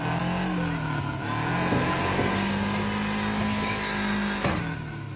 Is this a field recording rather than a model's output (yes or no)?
yes